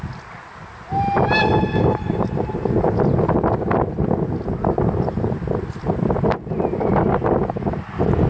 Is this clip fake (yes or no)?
no